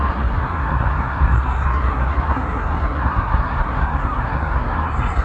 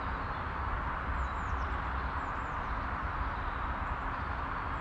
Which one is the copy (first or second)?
first